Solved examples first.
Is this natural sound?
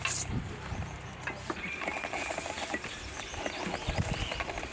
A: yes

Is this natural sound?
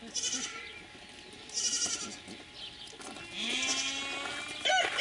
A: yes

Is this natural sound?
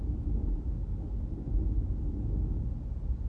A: yes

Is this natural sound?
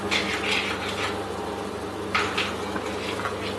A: yes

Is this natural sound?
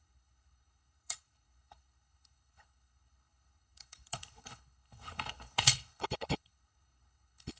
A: no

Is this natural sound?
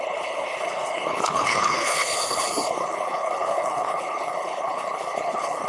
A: no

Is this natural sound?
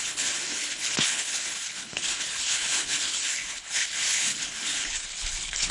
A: no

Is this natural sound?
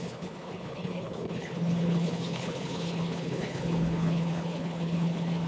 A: no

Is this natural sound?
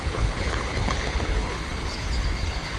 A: no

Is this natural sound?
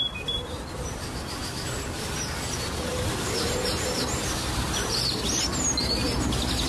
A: yes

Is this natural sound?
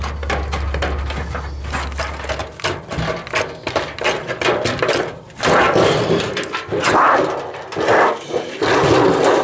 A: yes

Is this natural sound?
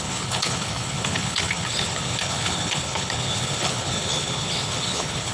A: no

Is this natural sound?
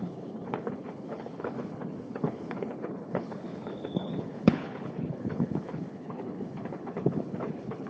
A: no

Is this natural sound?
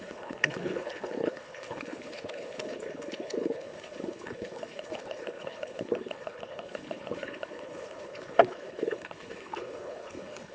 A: no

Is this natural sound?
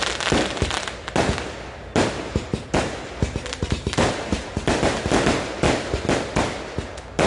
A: yes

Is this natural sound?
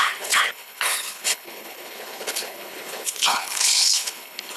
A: no